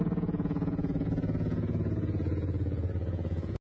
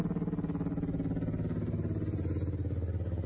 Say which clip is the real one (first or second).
second